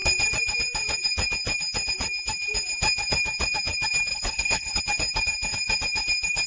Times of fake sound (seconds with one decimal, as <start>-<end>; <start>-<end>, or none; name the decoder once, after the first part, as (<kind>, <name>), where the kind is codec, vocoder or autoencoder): 4.1-4.8 (codec, HILCodec)